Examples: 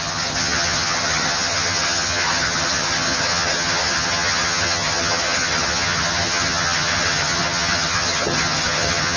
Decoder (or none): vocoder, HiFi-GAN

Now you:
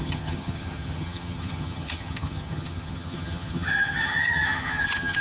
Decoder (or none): vocoder, HiFi-GAN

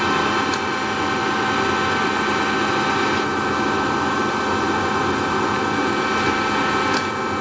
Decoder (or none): none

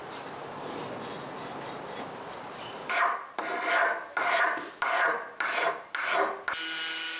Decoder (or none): none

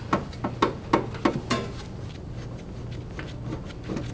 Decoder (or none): none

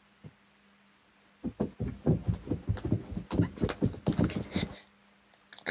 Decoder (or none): none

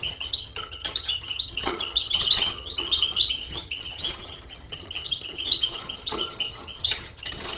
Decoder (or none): vocoder, HiFi-GAN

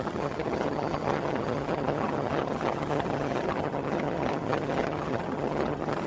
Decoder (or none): vocoder, HiFi-GAN